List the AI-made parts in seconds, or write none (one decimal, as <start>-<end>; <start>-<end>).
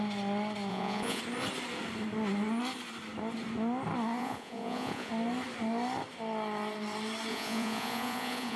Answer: 0.7-1.2; 4.2-5.1; 7.3-8.6